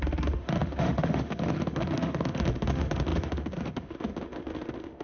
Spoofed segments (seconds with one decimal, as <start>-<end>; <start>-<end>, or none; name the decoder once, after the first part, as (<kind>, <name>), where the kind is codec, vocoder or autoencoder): 0.0-5.0 (autoencoder, DAC-VAE)

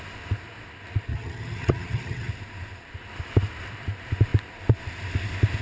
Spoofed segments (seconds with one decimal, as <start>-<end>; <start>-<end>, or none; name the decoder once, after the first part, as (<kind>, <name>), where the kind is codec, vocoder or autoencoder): 1.1-2.3 (vocoder, HiFi-GAN)

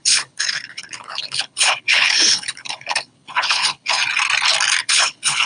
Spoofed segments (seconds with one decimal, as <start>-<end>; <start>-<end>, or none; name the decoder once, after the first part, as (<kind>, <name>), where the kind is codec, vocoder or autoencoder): 0.0-4.0 (codec, HILCodec); 4.8-5.5

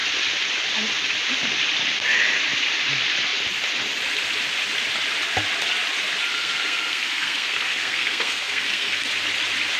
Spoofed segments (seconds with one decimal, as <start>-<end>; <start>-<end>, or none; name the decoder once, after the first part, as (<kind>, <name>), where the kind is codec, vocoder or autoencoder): 6.3-9.0 (codec, SNAC)

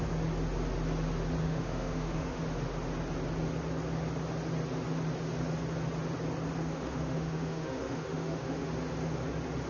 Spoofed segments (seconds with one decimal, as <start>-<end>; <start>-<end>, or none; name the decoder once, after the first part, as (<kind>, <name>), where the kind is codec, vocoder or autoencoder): 1.4-2.4 (autoencoder, DAC-VAE); 6.6-8.7

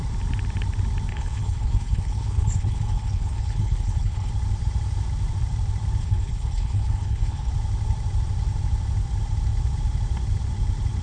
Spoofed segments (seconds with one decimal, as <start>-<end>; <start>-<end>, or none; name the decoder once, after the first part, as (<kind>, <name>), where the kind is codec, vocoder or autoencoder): 1.1-4.3 (codec, HILCodec); 6.0-7.5

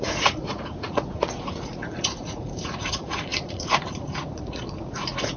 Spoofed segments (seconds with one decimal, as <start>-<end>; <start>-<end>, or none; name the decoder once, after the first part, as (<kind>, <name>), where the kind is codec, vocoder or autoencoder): 0.0-5.4 (vocoder, Vocos)

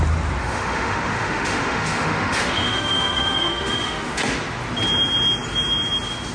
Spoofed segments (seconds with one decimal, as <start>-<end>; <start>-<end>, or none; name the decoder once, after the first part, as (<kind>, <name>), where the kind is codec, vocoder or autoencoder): 0.4-4.2 (autoencoder, DAC-VAE)